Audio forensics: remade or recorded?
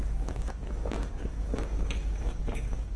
remade